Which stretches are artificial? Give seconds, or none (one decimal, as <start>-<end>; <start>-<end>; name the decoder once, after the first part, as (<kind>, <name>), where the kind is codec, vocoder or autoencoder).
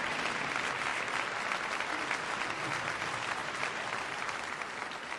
0.9-1.6 (vocoder, BigVGAN v2); 3.4-5.2